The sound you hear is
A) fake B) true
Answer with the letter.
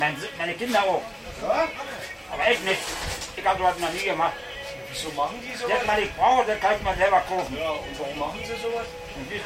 B